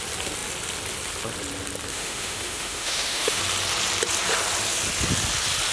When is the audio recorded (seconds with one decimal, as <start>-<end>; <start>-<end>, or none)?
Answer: 0.0-1.9; 3.4-5.7